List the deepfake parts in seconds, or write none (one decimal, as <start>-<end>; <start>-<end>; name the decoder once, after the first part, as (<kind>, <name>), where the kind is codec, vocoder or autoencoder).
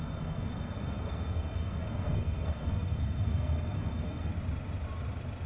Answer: 0.0-4.3 (codec, SNAC)